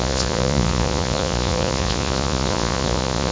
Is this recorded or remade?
remade